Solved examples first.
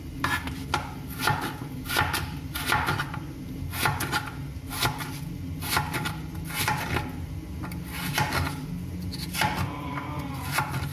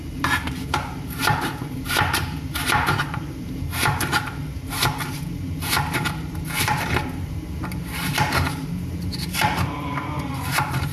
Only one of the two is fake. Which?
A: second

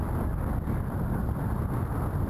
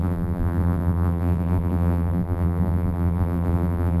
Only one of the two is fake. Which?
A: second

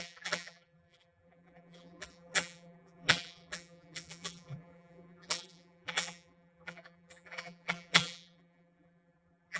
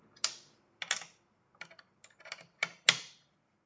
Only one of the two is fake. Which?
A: first